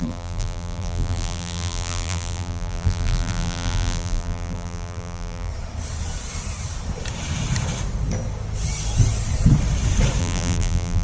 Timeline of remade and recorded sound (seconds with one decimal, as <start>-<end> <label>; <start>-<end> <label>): 0.0-5.5 remade; 5.5-10.2 recorded; 10.2-11.0 remade